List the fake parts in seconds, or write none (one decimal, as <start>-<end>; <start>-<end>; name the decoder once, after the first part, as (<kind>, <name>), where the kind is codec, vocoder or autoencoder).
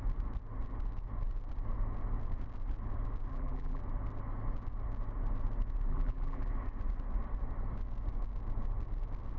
3.3-3.8 (vocoder, BigVGAN v2); 5.9-6.5